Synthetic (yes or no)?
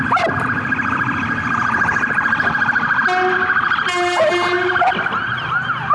no